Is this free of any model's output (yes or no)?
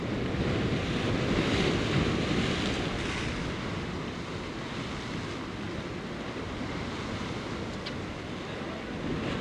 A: yes